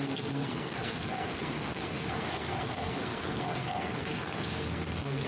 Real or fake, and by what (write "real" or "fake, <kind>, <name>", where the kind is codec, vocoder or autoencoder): fake, codec, SNAC